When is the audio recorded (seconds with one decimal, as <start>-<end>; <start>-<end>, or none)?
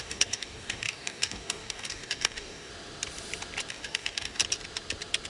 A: 2.7-3.7; 4.4-5.3